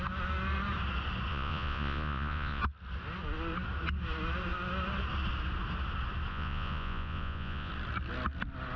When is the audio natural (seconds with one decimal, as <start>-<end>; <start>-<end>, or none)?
0.0-1.3; 2.6-6.3; 7.7-8.8